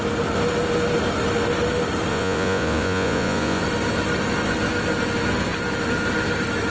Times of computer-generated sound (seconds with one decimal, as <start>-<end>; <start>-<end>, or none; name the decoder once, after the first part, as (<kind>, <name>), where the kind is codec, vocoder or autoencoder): 2.1-3.6 (vocoder, Vocos)